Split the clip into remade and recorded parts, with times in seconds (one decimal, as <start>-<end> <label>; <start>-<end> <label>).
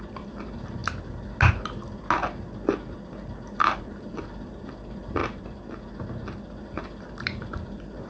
0.0-0.8 remade; 0.8-3.8 recorded; 3.8-5.2 remade; 5.2-6.6 recorded; 6.6-8.1 remade